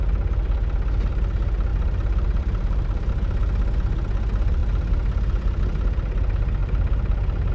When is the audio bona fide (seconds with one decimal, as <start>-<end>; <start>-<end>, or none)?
0.0-1.7; 3.1-6.6